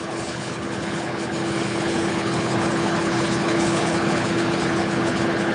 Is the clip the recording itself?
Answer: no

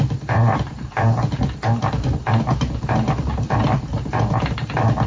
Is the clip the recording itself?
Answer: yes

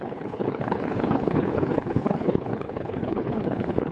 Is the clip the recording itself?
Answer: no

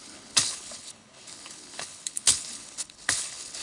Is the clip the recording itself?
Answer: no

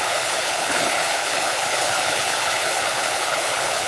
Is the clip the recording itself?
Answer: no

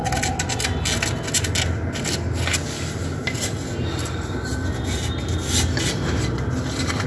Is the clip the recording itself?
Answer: yes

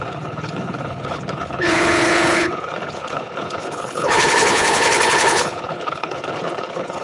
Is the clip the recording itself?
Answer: no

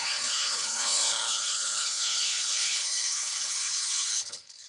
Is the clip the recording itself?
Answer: no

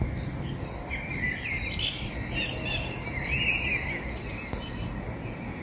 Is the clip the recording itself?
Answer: yes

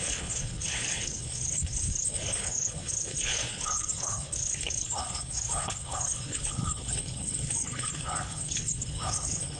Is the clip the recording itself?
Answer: no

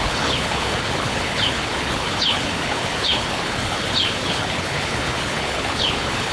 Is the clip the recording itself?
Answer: no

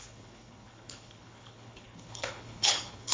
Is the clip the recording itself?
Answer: no